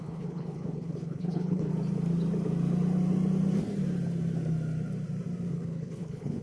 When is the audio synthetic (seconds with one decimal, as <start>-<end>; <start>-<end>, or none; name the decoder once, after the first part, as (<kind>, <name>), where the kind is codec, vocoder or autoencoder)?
0.0-1.7 (codec, HILCodec); 5.5-6.4